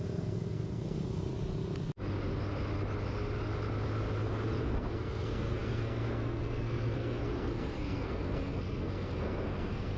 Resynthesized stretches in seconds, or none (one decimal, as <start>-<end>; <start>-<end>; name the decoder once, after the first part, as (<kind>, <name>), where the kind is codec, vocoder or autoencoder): 0.0-1.3 (codec, SNAC); 4.6-10.0